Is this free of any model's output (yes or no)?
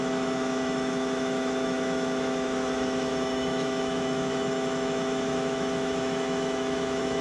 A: no